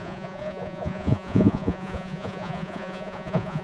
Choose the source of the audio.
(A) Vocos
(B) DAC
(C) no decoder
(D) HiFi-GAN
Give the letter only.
A